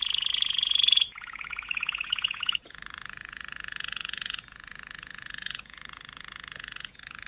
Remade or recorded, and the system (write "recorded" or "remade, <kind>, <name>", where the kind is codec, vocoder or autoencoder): remade, vocoder, Vocos